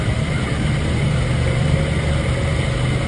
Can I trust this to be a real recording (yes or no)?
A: yes